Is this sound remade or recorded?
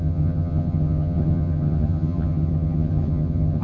remade